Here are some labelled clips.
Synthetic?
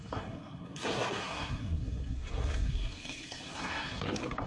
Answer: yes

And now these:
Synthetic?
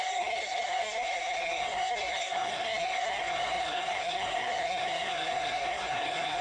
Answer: yes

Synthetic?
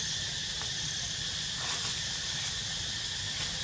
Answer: no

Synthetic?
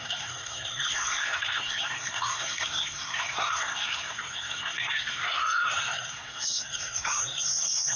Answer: yes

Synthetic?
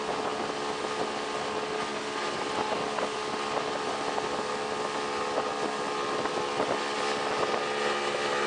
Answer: no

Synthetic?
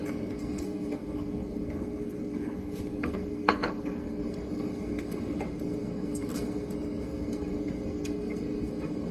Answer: yes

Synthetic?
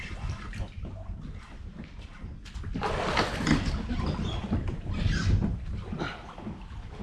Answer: no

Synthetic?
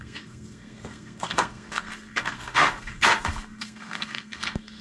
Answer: yes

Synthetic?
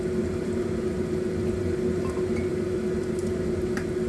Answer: no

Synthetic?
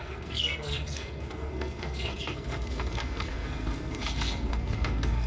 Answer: yes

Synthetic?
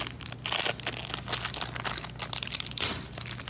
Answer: no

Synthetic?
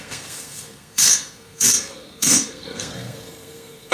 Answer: yes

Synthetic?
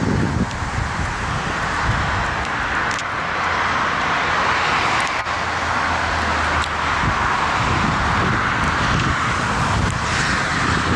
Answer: no